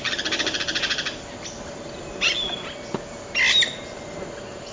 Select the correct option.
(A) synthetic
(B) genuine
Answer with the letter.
B